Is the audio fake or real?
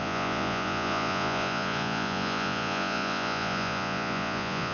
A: fake